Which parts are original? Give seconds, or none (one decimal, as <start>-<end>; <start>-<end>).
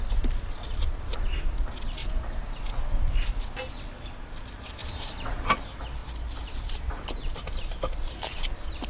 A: 0.0-2.0; 2.6-4.8; 5.5-6.0